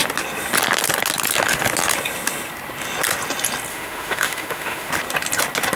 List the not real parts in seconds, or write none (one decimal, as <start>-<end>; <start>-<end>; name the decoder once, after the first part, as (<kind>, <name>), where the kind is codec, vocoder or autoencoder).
3.7-4.9 (autoencoder, DAC-VAE)